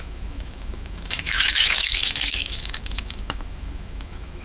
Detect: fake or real fake